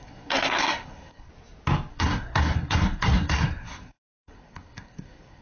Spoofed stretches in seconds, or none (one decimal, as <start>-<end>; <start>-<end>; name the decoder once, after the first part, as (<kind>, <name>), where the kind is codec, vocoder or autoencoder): 0.0-1.3 (codec, SNAC); 1.9-5.4